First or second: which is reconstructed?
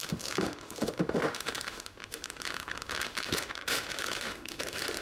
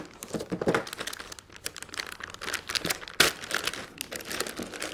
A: first